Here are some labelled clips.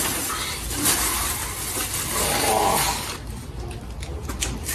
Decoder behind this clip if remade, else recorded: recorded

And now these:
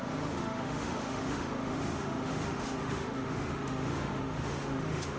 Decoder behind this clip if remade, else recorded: remade, autoencoder, DAC-VAE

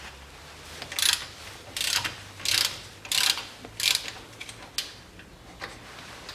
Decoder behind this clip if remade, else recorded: recorded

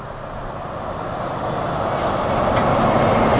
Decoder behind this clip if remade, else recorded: recorded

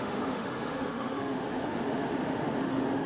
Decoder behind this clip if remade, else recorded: remade, autoencoder, DAC-VAE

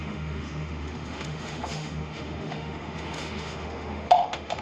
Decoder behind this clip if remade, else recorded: remade, autoencoder, DAC-VAE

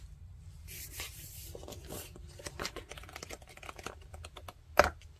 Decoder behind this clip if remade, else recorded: recorded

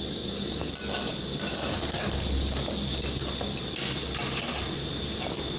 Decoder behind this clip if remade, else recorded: recorded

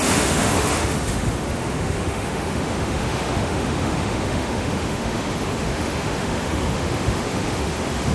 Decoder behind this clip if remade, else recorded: remade, autoencoder, DAC-VAE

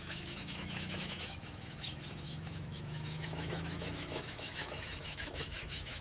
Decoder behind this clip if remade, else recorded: remade, autoencoder, DAC-VAE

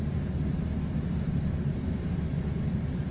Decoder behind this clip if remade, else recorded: recorded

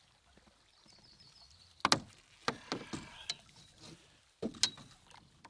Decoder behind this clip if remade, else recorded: recorded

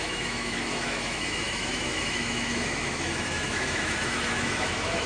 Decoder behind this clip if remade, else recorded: remade, autoencoder, DAC-VAE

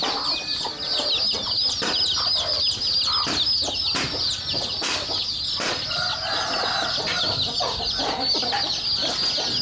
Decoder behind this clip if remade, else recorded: recorded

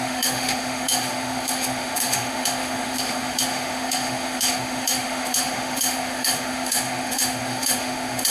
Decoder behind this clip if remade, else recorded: remade, autoencoder, DAC-VAE